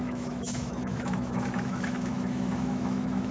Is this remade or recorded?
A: remade